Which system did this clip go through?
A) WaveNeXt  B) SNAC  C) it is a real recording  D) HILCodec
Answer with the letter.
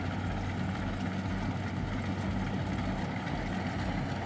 C